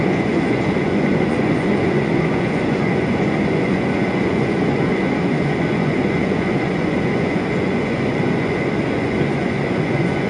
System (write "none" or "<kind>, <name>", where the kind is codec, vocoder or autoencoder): vocoder, Vocos